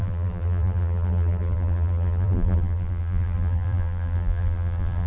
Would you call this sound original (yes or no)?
no